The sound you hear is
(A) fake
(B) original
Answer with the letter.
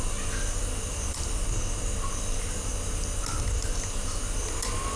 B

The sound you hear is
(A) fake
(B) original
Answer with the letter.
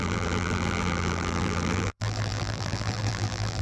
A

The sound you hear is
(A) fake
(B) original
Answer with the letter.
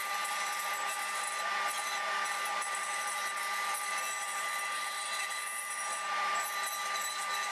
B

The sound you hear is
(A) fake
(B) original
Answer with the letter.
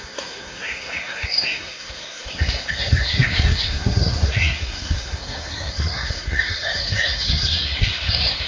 A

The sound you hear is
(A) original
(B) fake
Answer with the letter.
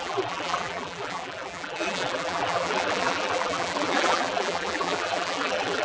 B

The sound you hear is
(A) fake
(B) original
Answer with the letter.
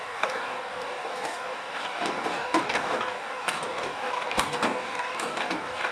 A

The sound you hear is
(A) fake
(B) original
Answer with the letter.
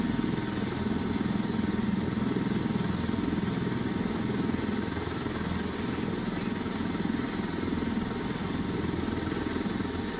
B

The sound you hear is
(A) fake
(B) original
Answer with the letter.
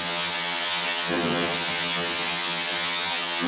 A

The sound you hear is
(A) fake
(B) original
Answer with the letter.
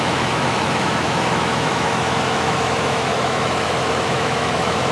A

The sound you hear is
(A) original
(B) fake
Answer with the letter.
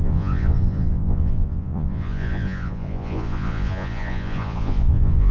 B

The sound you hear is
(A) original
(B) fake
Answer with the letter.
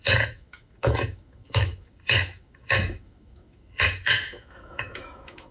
B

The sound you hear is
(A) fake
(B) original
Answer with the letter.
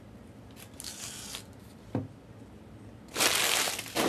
B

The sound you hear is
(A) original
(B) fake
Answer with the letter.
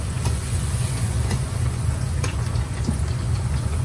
B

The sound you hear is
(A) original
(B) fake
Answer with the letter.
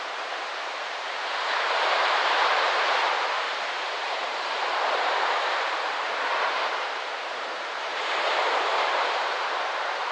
B